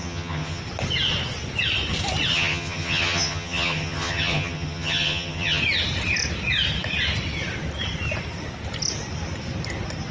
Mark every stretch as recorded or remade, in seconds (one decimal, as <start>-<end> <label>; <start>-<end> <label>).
0.0-0.6 remade; 0.6-2.3 recorded; 2.3-5.6 remade; 5.6-10.1 recorded

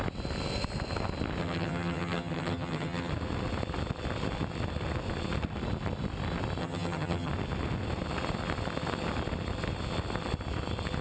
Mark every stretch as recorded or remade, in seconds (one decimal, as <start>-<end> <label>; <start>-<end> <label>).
0.0-1.4 recorded; 1.4-3.1 remade; 3.1-6.6 recorded; 6.6-7.3 remade; 7.3-11.0 recorded

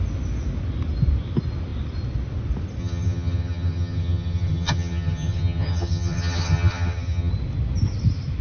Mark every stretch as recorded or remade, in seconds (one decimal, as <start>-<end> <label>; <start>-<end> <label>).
0.0-2.8 recorded; 2.8-7.3 remade; 7.3-8.4 recorded

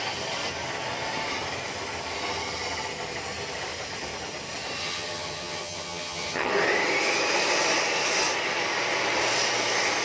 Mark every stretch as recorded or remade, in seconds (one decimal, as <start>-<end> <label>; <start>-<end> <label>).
0.0-4.8 recorded; 4.8-6.5 remade; 6.5-10.0 recorded